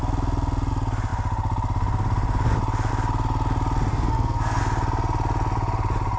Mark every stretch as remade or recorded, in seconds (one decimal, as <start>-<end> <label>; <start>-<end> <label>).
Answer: 0.0-3.9 recorded; 3.9-4.6 remade; 4.6-6.2 recorded